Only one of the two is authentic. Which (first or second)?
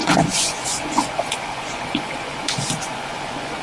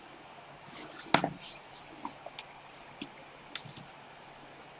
second